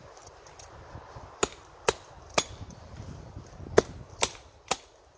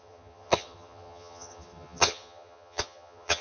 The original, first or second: first